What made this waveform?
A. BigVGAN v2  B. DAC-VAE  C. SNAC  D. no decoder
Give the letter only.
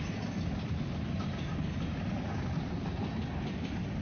D